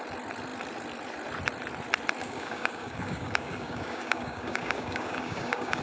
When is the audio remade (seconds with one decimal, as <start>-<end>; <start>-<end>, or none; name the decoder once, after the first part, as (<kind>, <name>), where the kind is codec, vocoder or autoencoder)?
2.2-5.8 (codec, DAC)